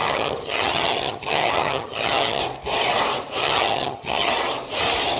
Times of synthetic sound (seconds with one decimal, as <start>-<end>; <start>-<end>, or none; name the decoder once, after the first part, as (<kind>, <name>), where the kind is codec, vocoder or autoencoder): 0.0-2.4 (vocoder, HiFi-GAN); 3.4-4.3